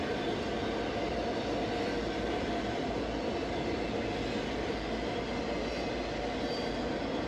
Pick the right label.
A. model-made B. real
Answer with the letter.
B